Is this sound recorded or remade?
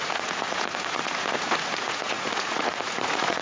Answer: remade